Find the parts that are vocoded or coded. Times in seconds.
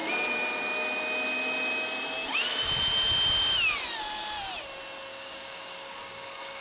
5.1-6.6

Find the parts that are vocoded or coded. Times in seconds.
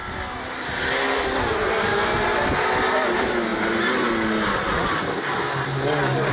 none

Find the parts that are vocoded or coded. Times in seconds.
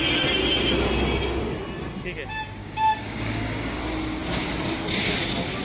2.6-3.8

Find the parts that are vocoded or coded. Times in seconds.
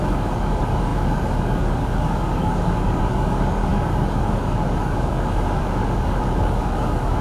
0.0-7.2